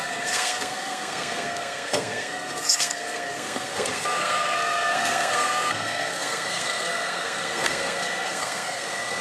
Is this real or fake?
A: fake